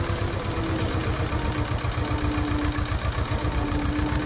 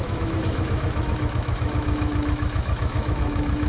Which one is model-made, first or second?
second